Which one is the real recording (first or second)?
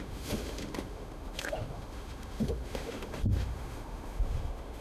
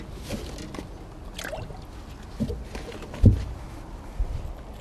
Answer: second